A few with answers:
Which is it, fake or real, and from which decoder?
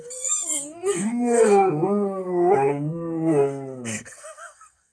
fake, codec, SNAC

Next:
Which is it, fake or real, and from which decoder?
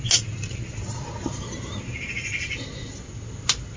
real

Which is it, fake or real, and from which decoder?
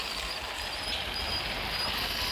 real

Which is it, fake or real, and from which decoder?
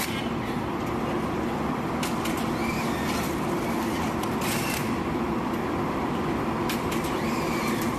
real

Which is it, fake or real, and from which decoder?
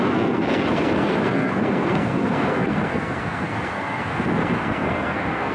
fake, codec, SNAC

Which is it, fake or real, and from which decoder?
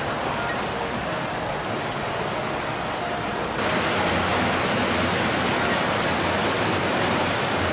real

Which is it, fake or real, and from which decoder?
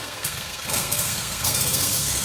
fake, codec, SNAC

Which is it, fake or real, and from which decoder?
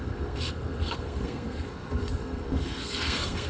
fake, codec, SNAC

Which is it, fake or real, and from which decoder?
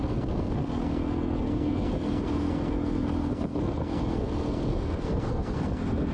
fake, codec, SNAC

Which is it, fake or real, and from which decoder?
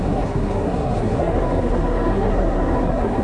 fake, codec, SNAC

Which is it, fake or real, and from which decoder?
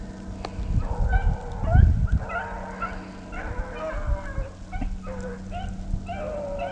real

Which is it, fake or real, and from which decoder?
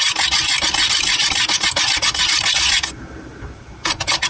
real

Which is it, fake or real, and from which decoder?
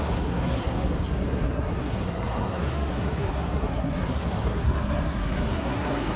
fake, codec, SNAC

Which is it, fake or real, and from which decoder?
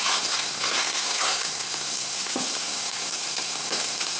fake, codec, SNAC